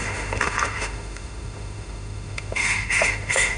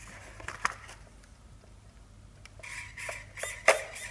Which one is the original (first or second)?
second